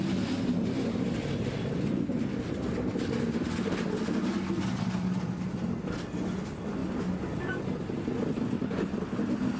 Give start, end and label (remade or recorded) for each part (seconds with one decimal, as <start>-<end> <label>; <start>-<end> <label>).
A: 0.0-9.6 recorded